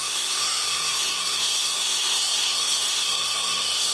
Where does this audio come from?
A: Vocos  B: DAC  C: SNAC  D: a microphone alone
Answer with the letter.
C